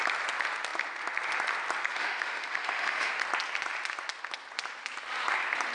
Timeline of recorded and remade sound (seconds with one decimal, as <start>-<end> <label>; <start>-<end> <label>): 0.0-1.9 recorded; 1.9-3.1 remade; 3.1-5.7 recorded